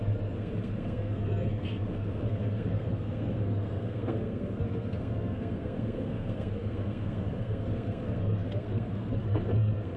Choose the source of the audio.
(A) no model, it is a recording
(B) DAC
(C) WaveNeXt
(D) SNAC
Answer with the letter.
D